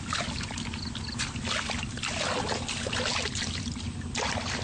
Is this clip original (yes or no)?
yes